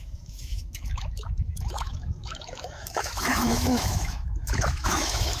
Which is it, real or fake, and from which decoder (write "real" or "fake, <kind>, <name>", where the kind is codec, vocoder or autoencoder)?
fake, autoencoder, DAC-VAE